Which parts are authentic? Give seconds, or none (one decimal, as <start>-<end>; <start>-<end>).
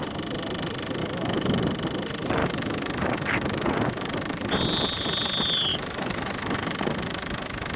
0.0-1.0; 1.6-2.4; 4.5-5.7